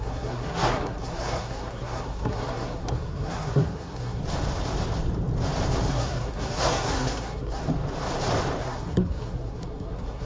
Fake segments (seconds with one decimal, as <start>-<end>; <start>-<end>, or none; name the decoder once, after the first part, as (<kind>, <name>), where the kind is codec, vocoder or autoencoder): 0.0-4.2 (codec, SNAC); 5.9-7.6; 8.6-10.3